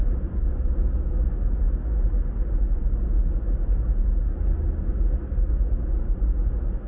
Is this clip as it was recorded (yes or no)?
yes